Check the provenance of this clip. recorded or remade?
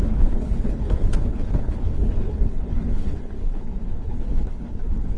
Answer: remade